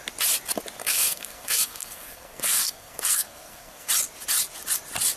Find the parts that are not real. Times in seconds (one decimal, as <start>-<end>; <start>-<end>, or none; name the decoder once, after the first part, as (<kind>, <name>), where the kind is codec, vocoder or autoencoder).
0.8-3.9 (codec, SNAC)